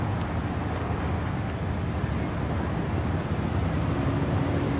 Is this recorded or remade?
recorded